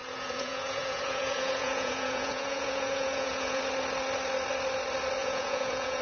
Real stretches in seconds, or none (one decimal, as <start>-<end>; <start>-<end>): 3.6-5.2